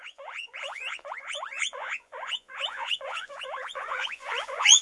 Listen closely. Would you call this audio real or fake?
fake